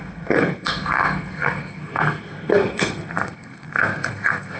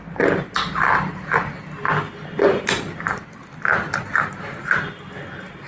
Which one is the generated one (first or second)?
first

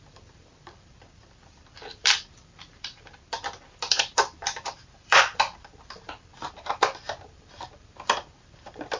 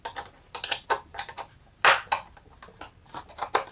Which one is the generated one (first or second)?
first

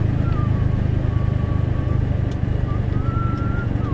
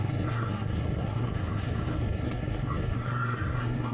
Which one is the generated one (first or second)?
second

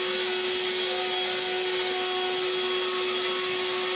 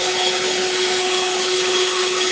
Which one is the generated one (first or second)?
second